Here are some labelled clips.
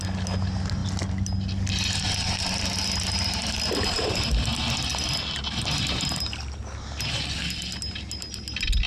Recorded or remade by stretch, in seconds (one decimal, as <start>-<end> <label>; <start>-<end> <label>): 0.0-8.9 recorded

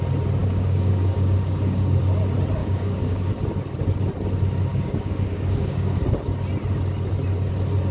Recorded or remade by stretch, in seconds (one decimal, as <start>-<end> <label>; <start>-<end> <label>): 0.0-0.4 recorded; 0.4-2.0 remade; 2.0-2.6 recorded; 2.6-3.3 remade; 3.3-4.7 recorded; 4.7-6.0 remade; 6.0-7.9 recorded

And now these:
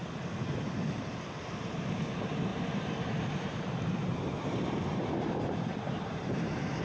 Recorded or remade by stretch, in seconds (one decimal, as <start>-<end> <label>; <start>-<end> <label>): 0.0-2.5 recorded; 2.5-6.8 remade

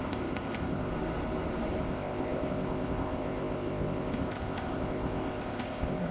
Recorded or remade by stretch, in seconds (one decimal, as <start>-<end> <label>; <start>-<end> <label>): 0.0-0.9 remade; 0.9-1.8 recorded; 1.8-6.1 remade

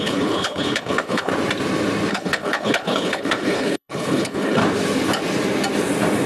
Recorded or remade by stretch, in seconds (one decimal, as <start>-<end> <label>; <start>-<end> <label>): 0.0-1.3 remade; 1.3-2.1 recorded; 2.1-4.6 remade; 4.6-6.3 recorded